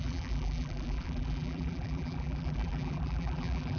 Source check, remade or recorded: remade